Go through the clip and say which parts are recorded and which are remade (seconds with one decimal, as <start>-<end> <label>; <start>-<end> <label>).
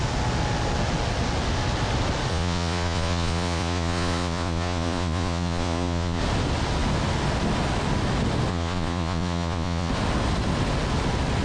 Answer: 0.0-2.3 recorded; 2.3-6.2 remade; 6.2-8.5 recorded; 8.5-9.9 remade; 9.9-11.4 recorded